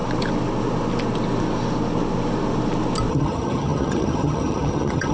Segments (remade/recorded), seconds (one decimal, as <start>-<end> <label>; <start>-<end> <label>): 0.0-3.1 recorded; 3.1-5.1 remade